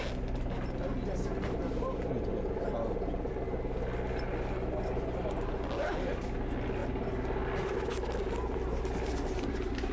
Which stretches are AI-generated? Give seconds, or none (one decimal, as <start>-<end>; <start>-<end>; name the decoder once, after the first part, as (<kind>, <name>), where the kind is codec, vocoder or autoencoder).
none